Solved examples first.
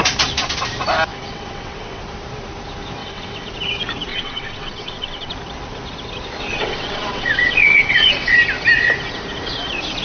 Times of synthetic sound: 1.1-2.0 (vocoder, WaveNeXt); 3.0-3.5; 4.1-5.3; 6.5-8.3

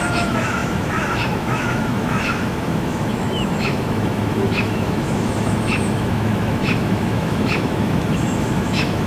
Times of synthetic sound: 0.0-9.1 (autoencoder, DAC-VAE)

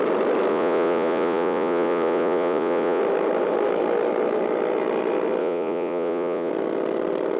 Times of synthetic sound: 0.5-3.0 (vocoder, Vocos); 5.4-6.5